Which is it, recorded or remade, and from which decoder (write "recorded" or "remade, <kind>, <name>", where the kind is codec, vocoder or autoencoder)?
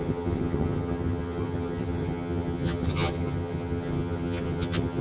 remade, vocoder, HiFi-GAN